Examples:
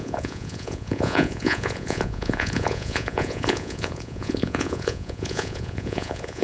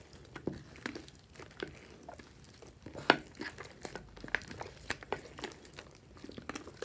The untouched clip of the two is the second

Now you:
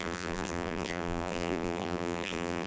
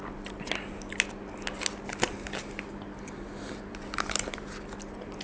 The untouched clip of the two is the second